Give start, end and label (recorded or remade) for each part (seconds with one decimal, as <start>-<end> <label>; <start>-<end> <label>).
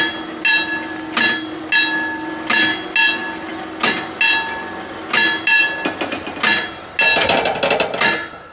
0.0-8.5 recorded